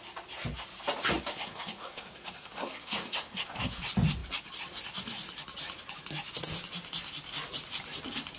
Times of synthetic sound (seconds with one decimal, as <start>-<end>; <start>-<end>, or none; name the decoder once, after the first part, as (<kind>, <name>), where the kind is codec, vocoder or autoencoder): 1.3-3.8 (codec, SNAC)